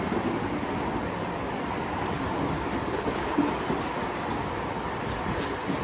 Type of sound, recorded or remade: recorded